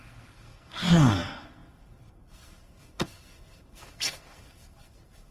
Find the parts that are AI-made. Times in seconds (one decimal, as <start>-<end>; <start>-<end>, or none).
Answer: 0.0-5.3

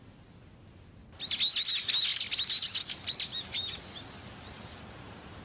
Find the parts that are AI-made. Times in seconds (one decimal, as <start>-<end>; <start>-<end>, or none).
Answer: none